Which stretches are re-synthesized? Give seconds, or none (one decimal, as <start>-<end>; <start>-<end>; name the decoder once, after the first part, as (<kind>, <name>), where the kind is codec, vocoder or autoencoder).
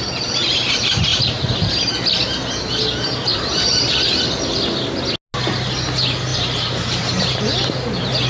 1.1-1.9 (vocoder, BigVGAN v2); 3.3-4.4; 6.3-7.4